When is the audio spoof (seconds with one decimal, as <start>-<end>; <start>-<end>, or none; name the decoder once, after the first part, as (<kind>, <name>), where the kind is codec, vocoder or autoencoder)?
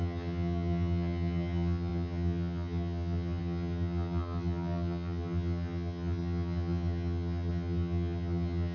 0.0-8.7 (vocoder, HiFi-GAN)